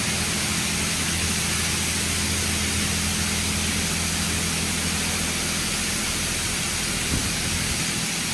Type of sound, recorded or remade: recorded